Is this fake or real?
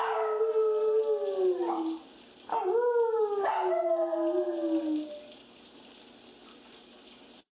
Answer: real